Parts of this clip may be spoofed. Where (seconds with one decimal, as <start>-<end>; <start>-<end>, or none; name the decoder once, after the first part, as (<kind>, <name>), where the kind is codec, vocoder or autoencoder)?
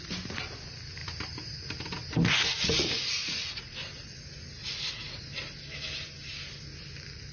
2.5-3.8 (vocoder, Vocos); 4.6-5.2